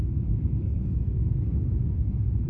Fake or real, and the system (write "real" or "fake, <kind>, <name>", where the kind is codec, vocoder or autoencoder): fake, codec, SNAC